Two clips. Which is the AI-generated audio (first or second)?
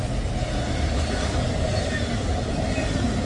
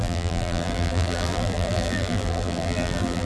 second